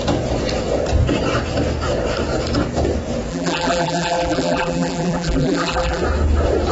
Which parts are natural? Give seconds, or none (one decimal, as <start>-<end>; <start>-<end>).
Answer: 0.0-3.3; 6.0-6.7